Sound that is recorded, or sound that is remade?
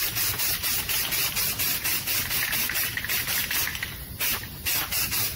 recorded